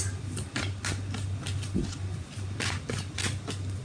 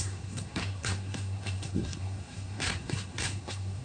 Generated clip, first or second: second